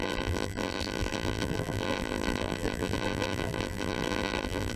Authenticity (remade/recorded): remade